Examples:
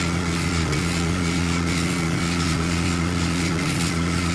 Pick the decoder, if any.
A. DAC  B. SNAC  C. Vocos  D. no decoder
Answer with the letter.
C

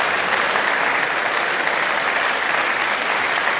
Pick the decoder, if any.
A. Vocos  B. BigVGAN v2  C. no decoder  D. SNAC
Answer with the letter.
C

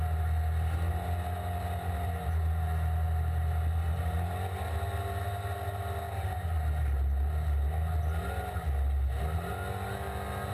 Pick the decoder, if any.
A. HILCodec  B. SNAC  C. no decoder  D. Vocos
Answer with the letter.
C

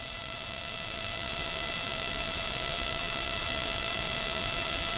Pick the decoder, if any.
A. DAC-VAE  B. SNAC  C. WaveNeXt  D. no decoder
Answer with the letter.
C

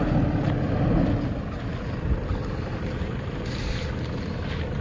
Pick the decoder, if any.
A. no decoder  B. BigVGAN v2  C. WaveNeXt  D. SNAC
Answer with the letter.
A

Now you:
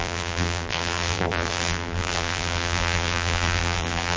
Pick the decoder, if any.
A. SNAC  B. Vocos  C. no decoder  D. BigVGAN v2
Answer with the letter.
D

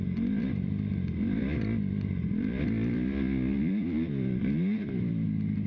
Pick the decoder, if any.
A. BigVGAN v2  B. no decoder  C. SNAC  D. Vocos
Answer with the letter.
A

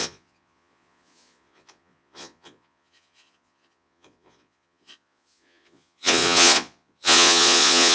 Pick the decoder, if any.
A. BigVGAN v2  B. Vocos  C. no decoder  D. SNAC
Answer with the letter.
B